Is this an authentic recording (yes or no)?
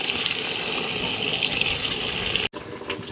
yes